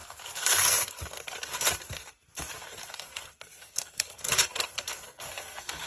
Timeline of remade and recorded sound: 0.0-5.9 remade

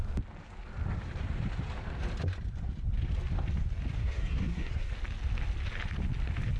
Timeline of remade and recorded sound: 0.0-4.0 recorded; 4.0-4.9 remade; 4.9-6.6 recorded

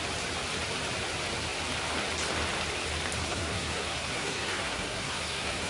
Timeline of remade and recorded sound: 0.0-3.3 recorded; 3.3-5.7 remade

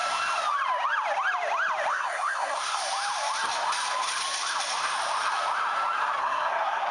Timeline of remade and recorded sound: 0.0-1.9 recorded; 1.9-2.8 remade; 2.8-6.2 recorded; 6.2-6.9 remade

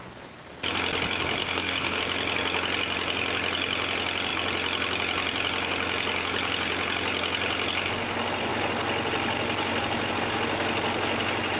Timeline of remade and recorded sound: 0.0-1.4 recorded; 1.4-2.0 remade; 2.0-11.6 recorded

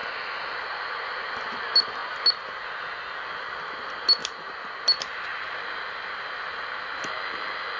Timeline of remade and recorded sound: 0.0-7.8 recorded

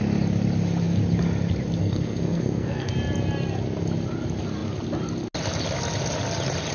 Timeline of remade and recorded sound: 0.0-1.8 recorded; 1.8-2.9 remade; 2.9-6.7 recorded

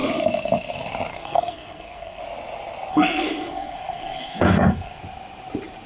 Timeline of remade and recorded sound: 0.0-1.1 recorded; 1.1-2.2 remade; 2.2-2.9 recorded; 2.9-5.0 remade; 5.0-5.9 recorded